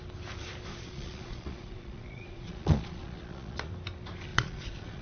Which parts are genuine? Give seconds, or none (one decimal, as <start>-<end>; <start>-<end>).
0.0-0.7; 3.7-4.3